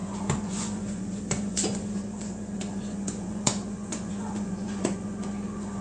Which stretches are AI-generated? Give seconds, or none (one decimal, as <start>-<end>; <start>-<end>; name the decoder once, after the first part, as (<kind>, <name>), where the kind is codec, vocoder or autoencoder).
0.0-5.8 (vocoder, Vocos)